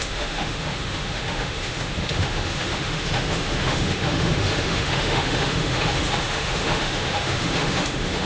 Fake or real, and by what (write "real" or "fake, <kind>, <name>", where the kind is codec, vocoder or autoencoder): fake, autoencoder, DAC-VAE